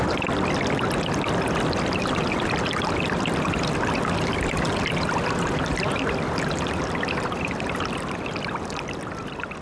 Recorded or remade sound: recorded